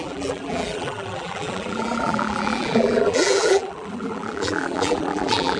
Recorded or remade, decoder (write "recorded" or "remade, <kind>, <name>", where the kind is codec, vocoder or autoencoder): remade, vocoder, BigVGAN v2